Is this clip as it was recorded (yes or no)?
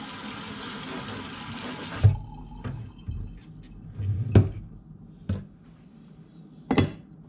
yes